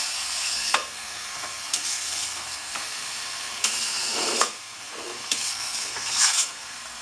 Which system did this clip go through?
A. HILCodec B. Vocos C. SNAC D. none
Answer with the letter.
C